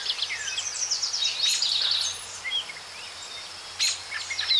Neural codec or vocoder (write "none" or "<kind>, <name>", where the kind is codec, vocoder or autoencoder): none